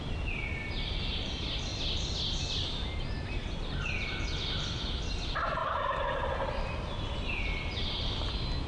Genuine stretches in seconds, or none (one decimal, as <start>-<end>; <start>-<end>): 0.0-5.6; 7.2-8.7